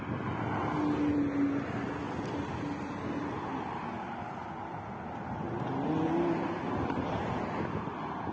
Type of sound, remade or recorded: recorded